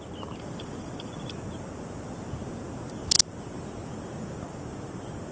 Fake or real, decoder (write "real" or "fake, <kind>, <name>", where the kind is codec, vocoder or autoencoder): real